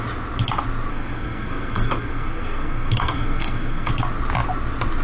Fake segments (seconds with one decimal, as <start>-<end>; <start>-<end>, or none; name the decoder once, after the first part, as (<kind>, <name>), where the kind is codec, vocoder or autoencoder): 0.9-3.9 (codec, SNAC)